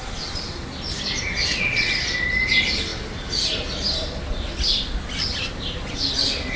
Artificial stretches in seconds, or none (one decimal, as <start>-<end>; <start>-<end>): 1.5-2.0